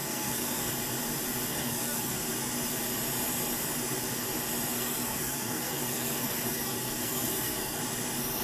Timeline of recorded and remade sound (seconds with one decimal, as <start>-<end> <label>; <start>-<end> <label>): 0.0-0.7 remade; 0.7-1.5 recorded; 1.5-2.3 remade; 2.3-4.7 recorded; 4.7-7.8 remade; 7.8-8.4 recorded